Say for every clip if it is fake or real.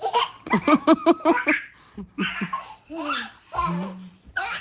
real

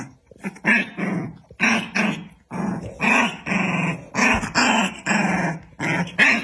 real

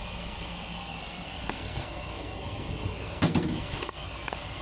fake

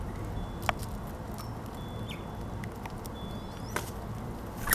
real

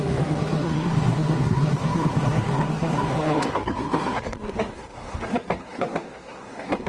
fake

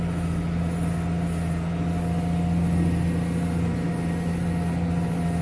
real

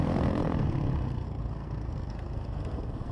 fake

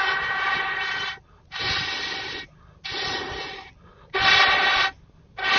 real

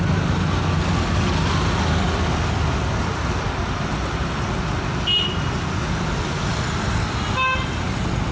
real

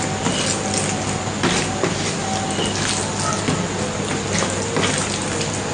real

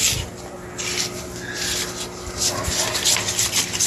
real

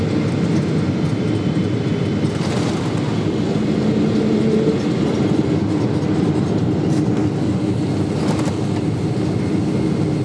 real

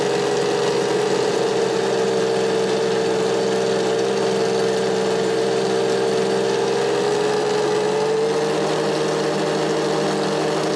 real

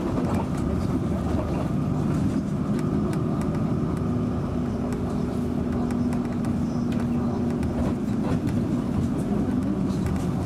real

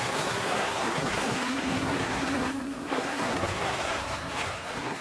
fake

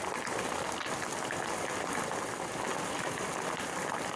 real